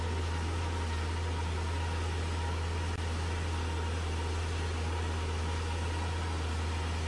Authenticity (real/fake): real